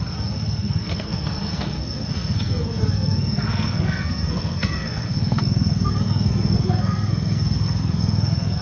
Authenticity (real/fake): fake